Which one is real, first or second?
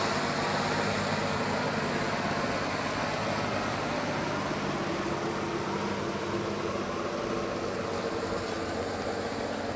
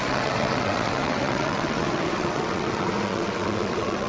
first